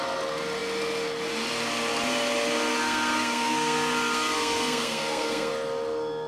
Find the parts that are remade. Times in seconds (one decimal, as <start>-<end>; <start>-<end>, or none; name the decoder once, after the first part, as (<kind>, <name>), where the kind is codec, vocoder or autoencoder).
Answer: 2.7-5.5 (codec, SNAC)

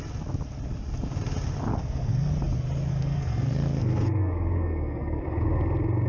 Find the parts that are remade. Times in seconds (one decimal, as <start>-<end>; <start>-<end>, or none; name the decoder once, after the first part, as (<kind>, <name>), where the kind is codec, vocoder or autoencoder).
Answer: 1.7-2.3 (codec, SNAC); 2.9-5.2

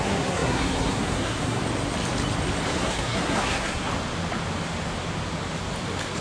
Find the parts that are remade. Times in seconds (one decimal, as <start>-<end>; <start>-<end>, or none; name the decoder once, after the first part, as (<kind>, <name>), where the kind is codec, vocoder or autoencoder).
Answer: 0.0-1.6 (codec, SNAC); 2.7-3.9

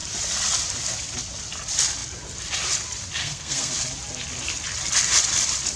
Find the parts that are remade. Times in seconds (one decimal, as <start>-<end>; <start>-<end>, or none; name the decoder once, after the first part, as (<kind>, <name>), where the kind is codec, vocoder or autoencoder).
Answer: 3.2-3.7 (codec, SNAC)

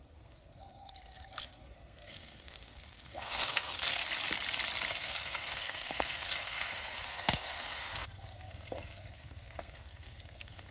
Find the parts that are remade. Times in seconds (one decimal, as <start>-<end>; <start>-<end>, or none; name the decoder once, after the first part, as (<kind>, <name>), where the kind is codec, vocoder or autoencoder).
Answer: 0.0-4.0 (codec, SNAC); 4.9-10.7

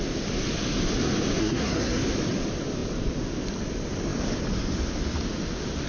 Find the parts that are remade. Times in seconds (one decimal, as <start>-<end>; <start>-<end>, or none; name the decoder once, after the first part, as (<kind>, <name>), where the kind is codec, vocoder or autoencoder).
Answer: 1.4-2.0 (codec, SNAC)

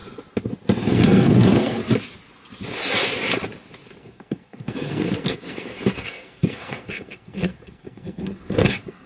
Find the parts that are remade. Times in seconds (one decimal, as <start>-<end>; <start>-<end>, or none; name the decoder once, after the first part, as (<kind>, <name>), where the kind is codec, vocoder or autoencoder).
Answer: 0.9-1.8 (codec, SNAC); 4.0-9.1

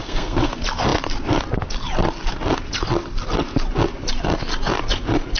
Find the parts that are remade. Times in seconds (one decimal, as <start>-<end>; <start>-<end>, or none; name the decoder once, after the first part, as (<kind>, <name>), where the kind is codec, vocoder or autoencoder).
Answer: 0.0-0.5 (codec, SNAC)